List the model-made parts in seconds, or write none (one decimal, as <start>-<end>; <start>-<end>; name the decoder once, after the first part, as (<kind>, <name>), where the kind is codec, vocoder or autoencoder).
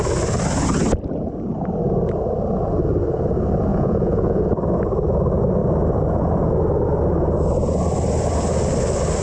3.7-4.4 (vocoder, Vocos)